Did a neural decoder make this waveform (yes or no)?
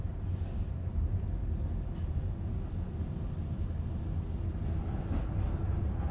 no